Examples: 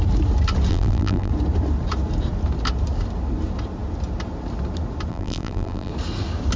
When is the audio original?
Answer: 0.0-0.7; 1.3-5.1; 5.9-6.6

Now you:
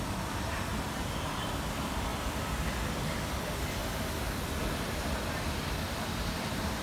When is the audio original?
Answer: 3.8-4.5

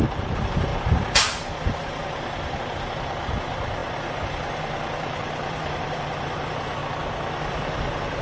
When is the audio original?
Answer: 6.8-7.4